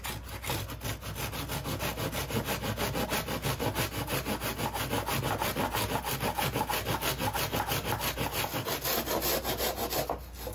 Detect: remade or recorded recorded